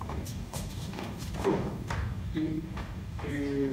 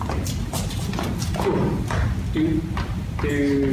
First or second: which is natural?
second